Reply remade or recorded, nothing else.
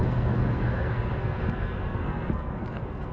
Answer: remade